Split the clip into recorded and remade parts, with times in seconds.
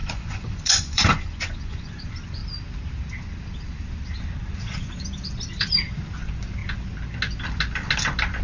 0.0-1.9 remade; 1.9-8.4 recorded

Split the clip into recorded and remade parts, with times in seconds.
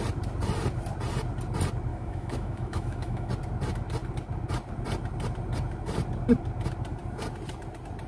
0.0-1.9 recorded; 1.9-3.3 remade; 3.3-8.1 recorded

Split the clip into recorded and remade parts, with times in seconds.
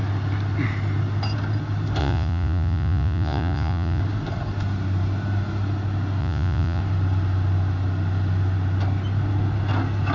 0.0-2.0 recorded; 2.0-4.0 remade; 4.0-6.2 recorded; 6.2-6.8 remade; 6.8-10.1 recorded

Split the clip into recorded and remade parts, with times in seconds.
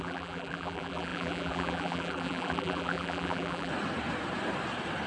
0.0-3.7 remade; 3.7-5.1 recorded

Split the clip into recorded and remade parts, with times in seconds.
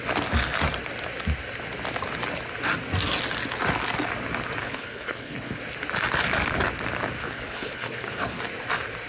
0.0-4.6 recorded; 4.6-5.6 remade; 5.6-7.2 recorded; 7.2-8.4 remade; 8.4-9.1 recorded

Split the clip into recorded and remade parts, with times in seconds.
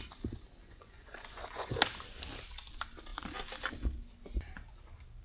0.0-0.6 recorded; 0.6-1.8 remade; 1.8-5.2 recorded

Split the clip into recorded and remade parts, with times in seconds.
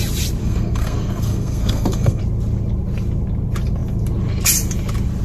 0.0-0.4 recorded; 0.4-2.2 remade; 2.2-5.2 recorded